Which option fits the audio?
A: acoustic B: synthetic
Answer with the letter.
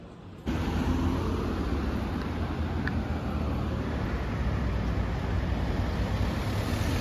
A